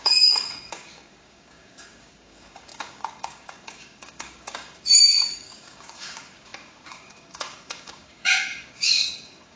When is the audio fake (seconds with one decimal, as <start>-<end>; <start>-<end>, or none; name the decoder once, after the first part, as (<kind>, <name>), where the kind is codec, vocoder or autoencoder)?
0.0-9.6 (codec, DAC)